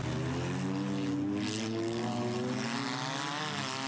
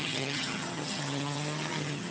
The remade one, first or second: second